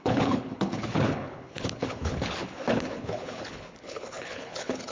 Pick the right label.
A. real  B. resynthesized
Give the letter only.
B